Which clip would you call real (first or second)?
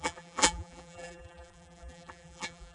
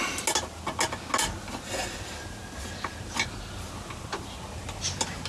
second